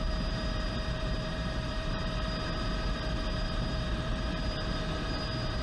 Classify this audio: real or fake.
fake